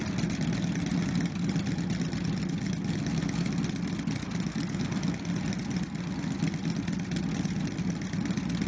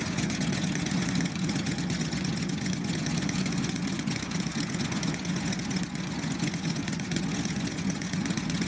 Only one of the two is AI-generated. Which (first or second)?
second